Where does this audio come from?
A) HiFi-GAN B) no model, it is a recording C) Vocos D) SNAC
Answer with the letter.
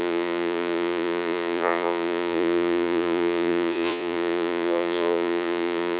C